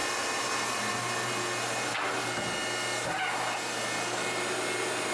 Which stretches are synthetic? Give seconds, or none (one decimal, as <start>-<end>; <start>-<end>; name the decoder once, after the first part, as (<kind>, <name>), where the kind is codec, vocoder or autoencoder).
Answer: none